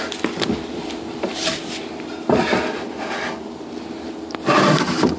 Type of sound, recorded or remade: recorded